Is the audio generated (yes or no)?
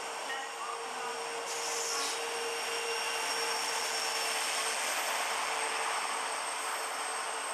no